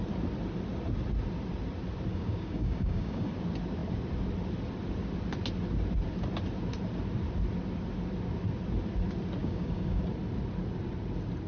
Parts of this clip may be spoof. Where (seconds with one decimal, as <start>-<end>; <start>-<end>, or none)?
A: 2.1-3.3; 9.4-10.0